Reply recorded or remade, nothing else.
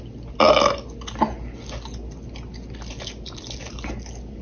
recorded